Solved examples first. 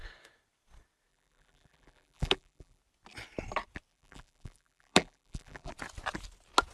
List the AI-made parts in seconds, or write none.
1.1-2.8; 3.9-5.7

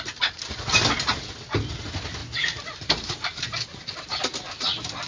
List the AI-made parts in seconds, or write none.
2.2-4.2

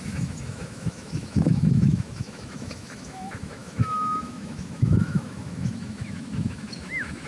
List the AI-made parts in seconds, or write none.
0.0-7.3

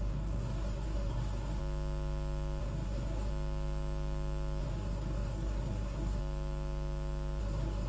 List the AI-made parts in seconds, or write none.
0.0-1.6; 2.6-3.3; 4.6-6.2; 7.4-7.9

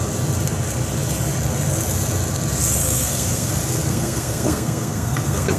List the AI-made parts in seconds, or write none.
2.8-3.5; 3.9-5.6